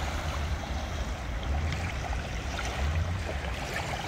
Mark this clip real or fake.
fake